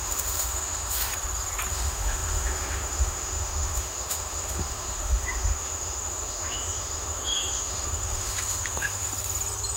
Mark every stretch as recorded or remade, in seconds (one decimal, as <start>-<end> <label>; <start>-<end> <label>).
0.0-1.1 remade; 1.1-1.7 recorded; 1.7-9.1 remade; 9.1-9.8 recorded